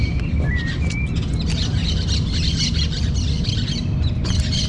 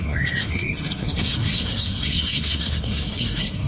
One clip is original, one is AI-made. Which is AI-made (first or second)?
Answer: second